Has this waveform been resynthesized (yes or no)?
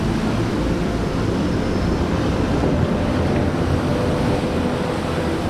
no